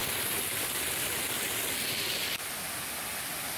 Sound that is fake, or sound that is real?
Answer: real